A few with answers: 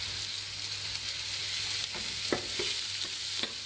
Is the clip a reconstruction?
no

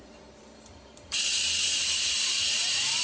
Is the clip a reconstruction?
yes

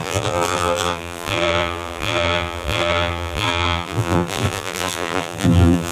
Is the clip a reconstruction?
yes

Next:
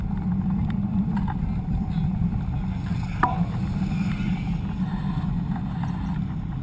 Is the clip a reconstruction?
no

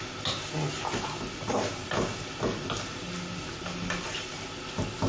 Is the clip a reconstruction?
yes